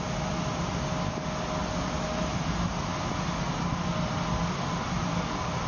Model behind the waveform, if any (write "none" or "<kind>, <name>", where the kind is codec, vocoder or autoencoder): none